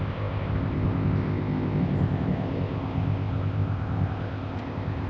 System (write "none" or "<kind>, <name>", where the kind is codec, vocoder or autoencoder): codec, ZipCodec